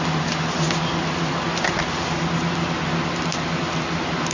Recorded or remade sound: recorded